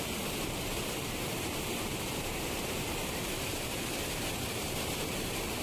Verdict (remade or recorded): remade